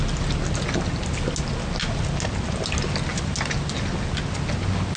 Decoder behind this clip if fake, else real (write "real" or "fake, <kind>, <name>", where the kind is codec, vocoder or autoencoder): real